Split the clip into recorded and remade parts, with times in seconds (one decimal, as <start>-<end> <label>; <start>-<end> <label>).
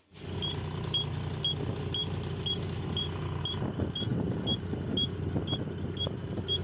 0.0-6.6 recorded